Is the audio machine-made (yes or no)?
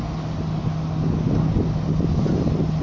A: no